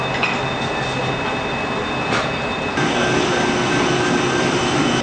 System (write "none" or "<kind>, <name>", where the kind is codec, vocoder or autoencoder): none